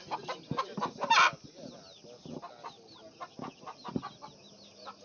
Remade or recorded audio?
recorded